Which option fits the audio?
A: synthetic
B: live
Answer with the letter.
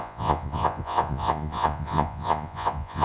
A